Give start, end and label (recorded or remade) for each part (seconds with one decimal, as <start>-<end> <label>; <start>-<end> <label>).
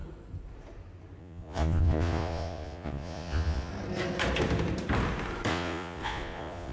0.0-1.2 recorded; 1.2-3.7 remade; 3.7-5.5 recorded; 5.5-6.7 remade